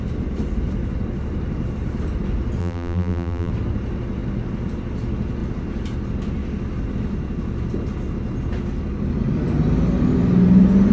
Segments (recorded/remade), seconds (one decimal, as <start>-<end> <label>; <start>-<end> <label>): 0.0-2.6 recorded; 2.6-3.5 remade; 3.5-10.9 recorded